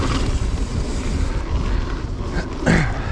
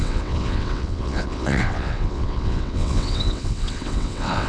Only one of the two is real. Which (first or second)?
first